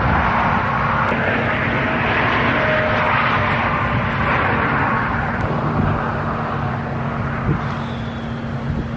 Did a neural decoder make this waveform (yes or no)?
no